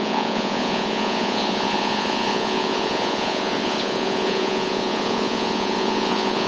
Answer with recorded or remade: remade